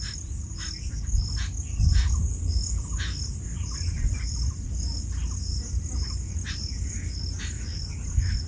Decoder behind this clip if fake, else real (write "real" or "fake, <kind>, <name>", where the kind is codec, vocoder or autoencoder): real